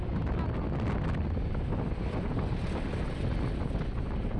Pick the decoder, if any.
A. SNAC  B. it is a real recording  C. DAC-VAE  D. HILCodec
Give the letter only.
B